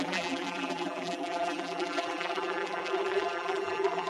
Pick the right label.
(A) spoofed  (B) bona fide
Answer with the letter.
A